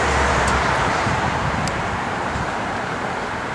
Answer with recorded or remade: remade